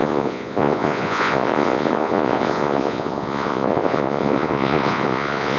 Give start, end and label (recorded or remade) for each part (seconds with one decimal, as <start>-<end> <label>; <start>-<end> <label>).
0.0-5.6 remade